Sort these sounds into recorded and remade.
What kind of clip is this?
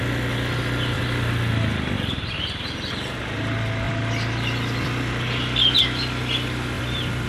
recorded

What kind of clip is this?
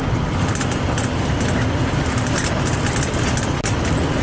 recorded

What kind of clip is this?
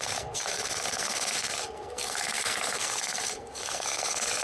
remade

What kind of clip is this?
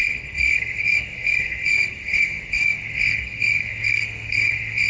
remade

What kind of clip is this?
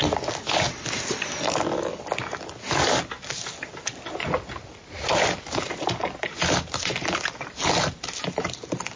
recorded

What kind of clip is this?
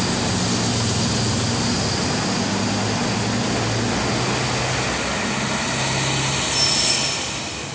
recorded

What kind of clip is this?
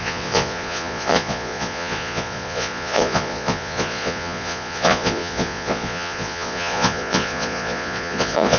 remade